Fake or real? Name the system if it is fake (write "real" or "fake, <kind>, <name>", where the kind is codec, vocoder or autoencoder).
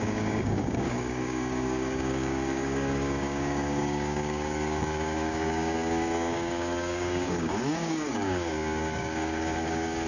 fake, codec, DAC